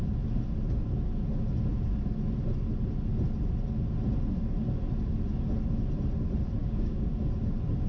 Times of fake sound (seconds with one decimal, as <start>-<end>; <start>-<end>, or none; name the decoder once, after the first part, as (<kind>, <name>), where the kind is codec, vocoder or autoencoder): 6.6-7.1 (codec, DAC)